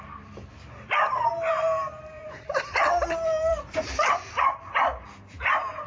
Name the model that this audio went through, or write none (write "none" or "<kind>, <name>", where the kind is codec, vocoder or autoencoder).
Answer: vocoder, BigVGAN v2